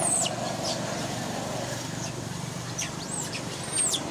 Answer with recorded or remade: remade